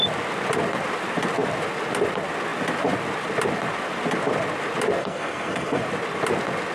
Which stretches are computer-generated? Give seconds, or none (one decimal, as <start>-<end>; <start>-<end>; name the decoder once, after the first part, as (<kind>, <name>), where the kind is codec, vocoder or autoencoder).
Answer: 5.0-5.8 (codec, SNAC)